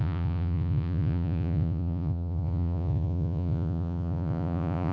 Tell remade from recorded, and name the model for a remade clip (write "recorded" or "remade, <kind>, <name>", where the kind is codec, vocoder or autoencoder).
remade, vocoder, Vocos